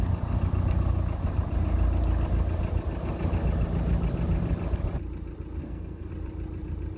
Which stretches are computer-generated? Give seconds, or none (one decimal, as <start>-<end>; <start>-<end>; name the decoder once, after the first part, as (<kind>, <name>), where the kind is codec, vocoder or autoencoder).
5.6-6.1 (codec, SNAC)